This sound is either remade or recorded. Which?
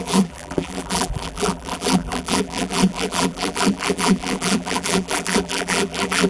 remade